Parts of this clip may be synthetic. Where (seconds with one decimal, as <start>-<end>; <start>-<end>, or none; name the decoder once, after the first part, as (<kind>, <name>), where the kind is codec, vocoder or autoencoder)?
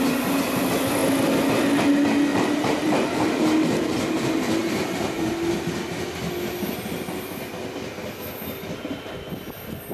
2.3-3.4 (vocoder, BigVGAN v2); 4.6-5.3